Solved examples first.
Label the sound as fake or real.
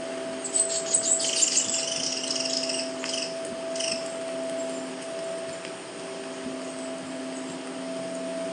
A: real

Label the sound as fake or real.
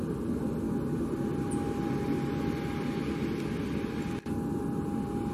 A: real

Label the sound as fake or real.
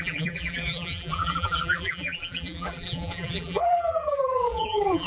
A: fake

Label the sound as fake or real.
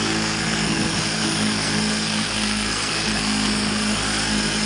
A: fake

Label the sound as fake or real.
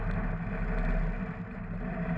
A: real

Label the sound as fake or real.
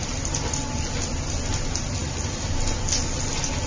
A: real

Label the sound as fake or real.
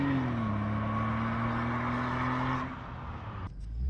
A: real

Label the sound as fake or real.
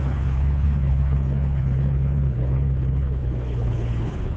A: fake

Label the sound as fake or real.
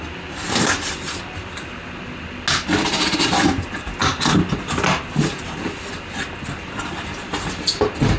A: real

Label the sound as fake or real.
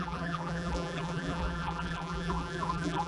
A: fake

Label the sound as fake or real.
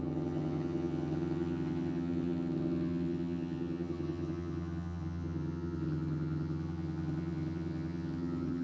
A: fake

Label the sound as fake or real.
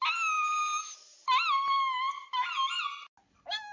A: real